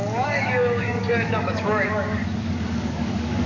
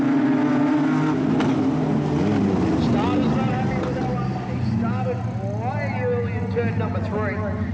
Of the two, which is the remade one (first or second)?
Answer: first